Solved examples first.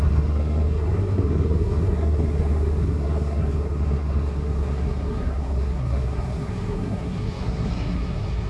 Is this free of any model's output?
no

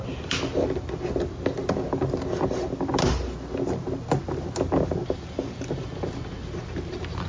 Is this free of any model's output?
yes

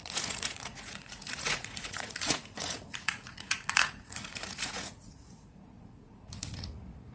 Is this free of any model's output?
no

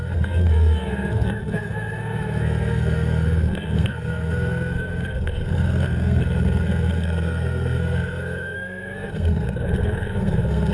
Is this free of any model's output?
no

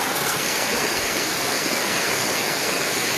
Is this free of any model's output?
no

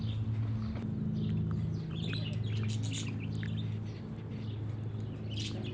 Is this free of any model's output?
yes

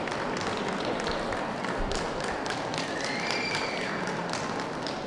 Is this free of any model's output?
yes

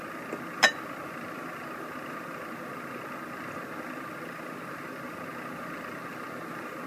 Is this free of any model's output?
yes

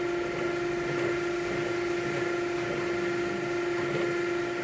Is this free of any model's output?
yes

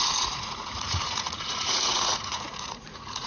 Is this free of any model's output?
no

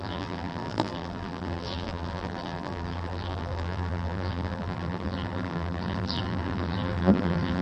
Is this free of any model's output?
no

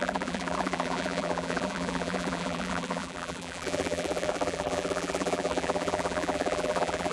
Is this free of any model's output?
no